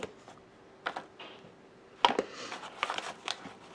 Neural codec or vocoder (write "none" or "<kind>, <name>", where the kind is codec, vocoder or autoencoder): none